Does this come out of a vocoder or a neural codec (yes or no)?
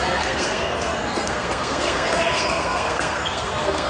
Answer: yes